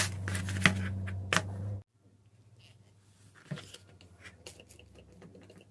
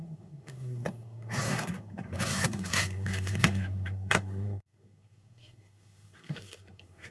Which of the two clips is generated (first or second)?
second